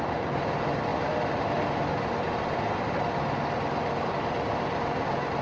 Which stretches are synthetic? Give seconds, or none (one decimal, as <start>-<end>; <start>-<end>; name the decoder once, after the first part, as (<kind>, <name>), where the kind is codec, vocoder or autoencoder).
none